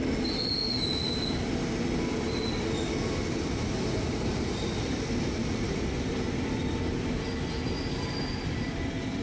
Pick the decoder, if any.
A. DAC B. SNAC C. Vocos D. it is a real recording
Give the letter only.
D